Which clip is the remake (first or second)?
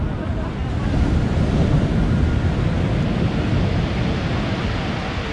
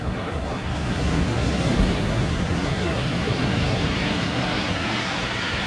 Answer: second